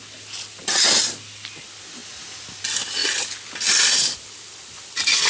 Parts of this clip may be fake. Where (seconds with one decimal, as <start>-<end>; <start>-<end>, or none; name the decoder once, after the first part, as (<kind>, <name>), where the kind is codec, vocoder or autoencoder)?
none